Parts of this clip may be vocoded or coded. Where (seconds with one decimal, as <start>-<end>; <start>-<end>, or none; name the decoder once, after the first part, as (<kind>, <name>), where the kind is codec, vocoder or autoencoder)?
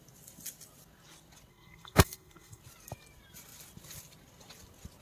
1.5-2.6 (codec, SNAC)